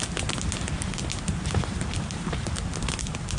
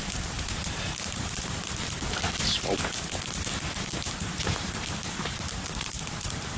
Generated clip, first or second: second